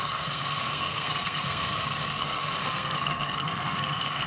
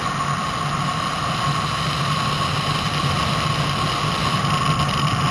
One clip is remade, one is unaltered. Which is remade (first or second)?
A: first